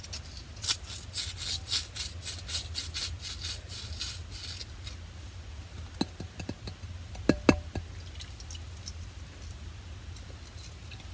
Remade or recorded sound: recorded